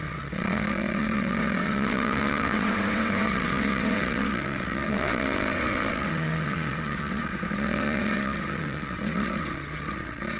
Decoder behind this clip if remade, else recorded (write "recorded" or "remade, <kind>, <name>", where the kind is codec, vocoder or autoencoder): remade, vocoder, WaveNeXt